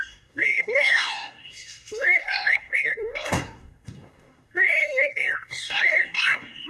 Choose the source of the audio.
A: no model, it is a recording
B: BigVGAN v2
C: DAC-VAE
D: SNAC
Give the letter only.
D